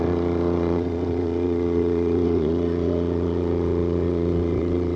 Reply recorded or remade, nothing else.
remade